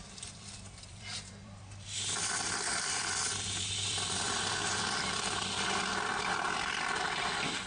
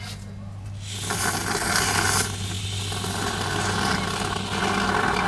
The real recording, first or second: second